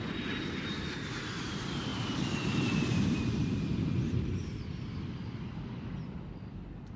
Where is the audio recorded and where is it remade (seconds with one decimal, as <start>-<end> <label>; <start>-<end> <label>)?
0.0-1.9 recorded; 1.9-3.6 remade; 3.6-7.0 recorded